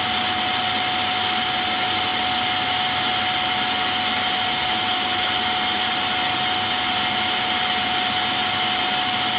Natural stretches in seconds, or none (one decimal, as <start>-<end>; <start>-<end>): 0.0-9.4